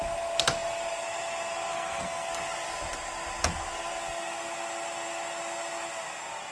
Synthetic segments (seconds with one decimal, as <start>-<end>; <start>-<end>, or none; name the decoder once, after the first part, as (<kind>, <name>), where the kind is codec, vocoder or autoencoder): 1.7-2.3 (codec, SNAC)